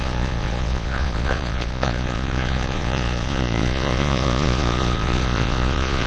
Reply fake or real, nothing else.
fake